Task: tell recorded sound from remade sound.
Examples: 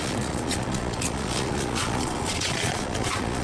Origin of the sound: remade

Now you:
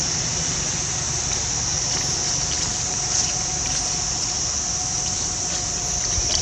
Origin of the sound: remade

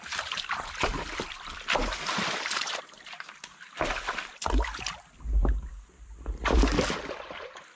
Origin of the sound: recorded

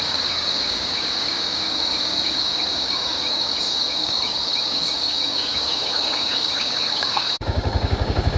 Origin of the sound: remade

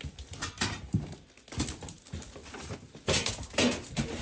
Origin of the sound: recorded